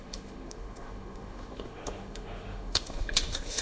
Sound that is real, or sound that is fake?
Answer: fake